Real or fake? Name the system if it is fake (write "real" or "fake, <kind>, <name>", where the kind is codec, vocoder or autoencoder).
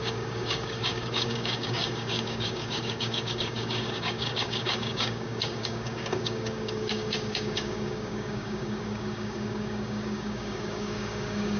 fake, codec, DAC